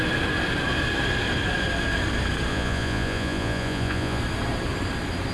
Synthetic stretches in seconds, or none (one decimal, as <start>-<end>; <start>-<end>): 2.5-4.2